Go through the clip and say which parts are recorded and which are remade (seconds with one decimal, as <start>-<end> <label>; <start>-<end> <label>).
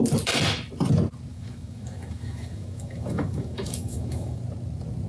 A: 0.0-1.3 recorded; 1.3-4.4 remade; 4.4-5.1 recorded